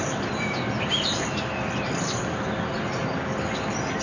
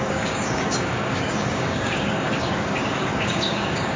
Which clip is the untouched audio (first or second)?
first